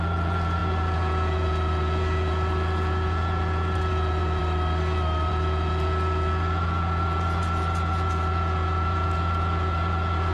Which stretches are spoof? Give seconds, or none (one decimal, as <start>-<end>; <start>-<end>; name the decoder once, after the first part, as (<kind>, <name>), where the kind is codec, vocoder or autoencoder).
0.0-4.4 (vocoder, Vocos); 5.3-10.3